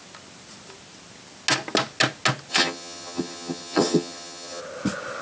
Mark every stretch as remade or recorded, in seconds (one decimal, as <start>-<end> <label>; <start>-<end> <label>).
0.0-2.5 recorded; 2.5-4.6 remade; 4.6-5.2 recorded